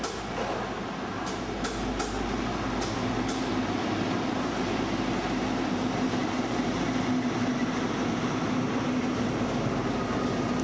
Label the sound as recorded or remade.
recorded